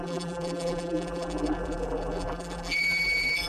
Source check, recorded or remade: remade